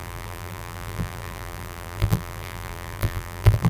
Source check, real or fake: fake